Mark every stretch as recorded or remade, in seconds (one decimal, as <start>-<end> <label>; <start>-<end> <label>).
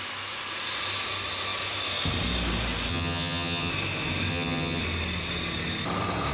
0.0-2.9 recorded; 2.9-3.7 remade; 3.7-4.3 recorded; 4.3-4.8 remade; 4.8-6.3 recorded